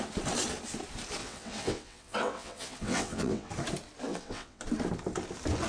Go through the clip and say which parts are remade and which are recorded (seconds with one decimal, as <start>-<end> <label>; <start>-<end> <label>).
0.0-1.2 recorded; 1.2-3.5 remade; 3.5-4.1 recorded; 4.1-4.6 remade; 4.6-5.7 recorded